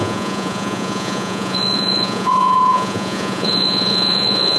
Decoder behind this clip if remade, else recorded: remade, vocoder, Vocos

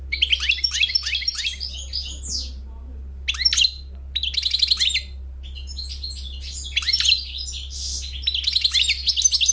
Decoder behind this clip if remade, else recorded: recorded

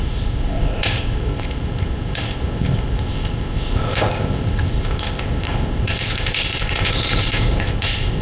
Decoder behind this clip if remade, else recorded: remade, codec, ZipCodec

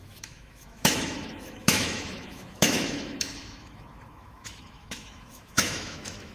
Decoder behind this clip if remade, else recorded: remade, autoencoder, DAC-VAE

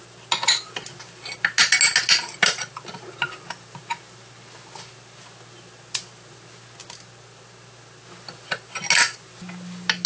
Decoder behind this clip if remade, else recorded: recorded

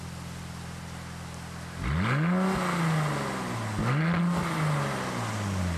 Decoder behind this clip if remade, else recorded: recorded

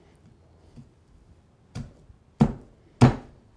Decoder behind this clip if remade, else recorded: recorded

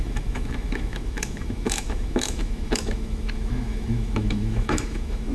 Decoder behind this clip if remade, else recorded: remade, autoencoder, DAC-VAE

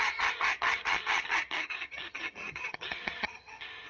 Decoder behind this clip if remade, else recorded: remade, vocoder, HiFi-GAN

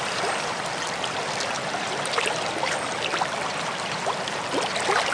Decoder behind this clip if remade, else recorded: remade, vocoder, BigVGAN v2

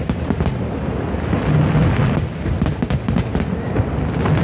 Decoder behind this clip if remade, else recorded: recorded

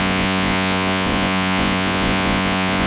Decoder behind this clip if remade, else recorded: remade, vocoder, Vocos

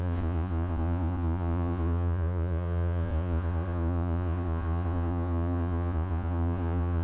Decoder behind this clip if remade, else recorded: remade, vocoder, Vocos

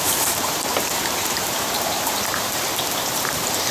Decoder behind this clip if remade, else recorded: remade, vocoder, BigVGAN v2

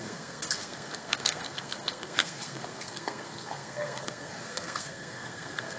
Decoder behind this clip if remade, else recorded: remade, codec, SNAC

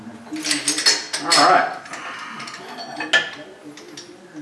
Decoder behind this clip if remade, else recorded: recorded